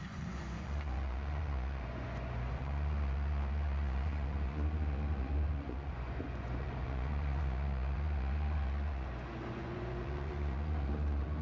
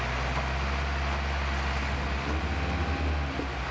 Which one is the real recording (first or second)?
second